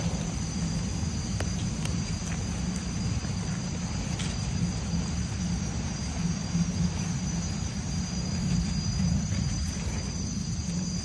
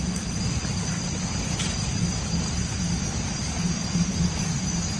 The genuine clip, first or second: first